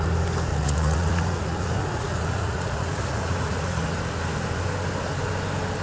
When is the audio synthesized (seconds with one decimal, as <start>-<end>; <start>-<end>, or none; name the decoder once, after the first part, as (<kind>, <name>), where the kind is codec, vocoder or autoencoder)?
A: 0.5-4.0 (vocoder, Vocos)